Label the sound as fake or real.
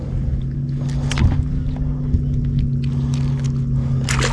real